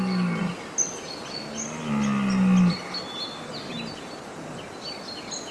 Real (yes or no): yes